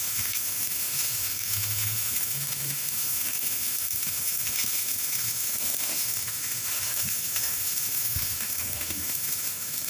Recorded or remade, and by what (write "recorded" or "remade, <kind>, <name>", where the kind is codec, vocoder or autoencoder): remade, autoencoder, DAC-VAE